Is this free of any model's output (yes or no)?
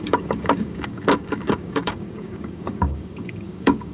no